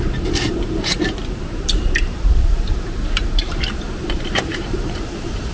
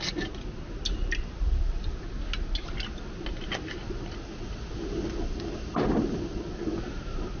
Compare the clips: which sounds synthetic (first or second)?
first